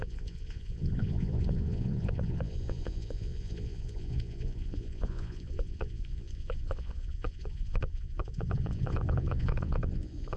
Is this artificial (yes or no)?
yes